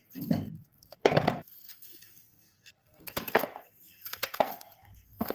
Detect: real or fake fake